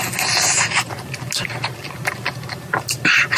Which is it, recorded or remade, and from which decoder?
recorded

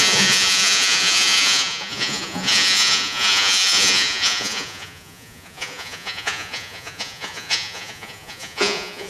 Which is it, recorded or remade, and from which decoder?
remade, vocoder, Vocos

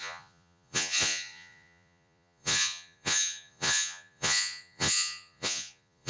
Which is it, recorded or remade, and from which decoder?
remade, vocoder, Vocos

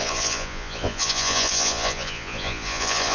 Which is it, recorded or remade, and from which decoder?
remade, vocoder, Vocos